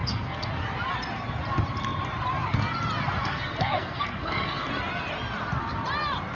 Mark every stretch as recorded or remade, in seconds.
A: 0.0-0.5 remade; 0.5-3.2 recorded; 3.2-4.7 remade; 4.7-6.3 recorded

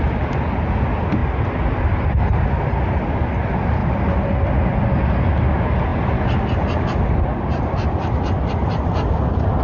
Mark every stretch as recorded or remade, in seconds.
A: 0.0-9.6 recorded